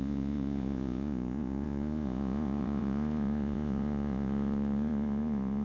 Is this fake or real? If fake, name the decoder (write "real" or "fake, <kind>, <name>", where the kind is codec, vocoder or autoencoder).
fake, vocoder, Vocos